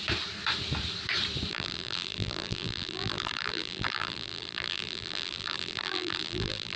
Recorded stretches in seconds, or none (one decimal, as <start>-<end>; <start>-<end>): 0.0-1.5